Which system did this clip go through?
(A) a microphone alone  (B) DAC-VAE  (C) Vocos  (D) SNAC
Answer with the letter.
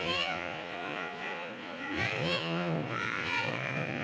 C